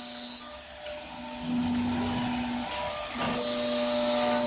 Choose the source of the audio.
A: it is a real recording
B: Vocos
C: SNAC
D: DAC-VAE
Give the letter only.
A